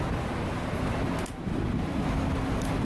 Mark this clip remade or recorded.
recorded